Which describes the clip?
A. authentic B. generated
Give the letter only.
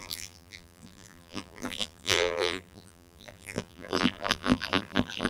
B